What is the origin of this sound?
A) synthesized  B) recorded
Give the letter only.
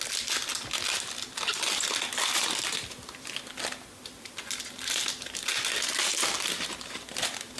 B